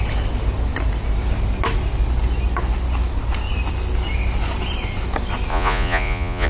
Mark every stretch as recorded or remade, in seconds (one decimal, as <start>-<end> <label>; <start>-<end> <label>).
0.0-5.5 recorded; 5.5-6.5 remade